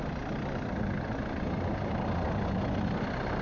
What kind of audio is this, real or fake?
real